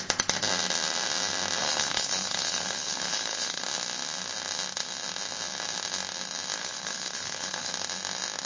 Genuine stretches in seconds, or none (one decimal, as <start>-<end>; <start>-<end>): 0.0-1.6; 3.6-6.6; 7.7-8.5